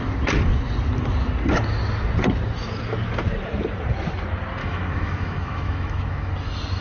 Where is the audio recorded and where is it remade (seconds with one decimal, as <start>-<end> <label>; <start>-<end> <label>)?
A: 0.0-4.6 recorded; 4.6-6.3 remade; 6.3-6.8 recorded